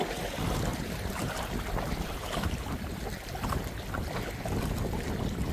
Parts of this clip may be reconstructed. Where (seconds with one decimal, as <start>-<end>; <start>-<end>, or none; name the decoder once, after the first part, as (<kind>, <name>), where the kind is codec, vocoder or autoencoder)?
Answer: 0.7-2.9 (vocoder, BigVGAN v2)